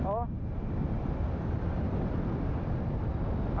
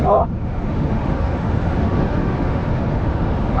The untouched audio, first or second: first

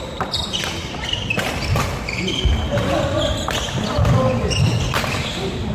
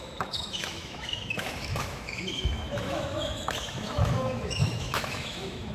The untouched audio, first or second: first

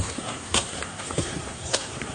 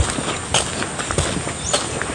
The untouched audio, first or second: second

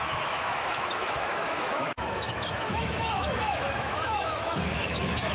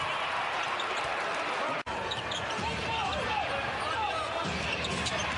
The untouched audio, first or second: second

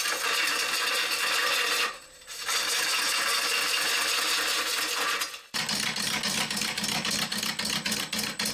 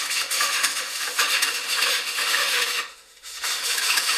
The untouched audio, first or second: first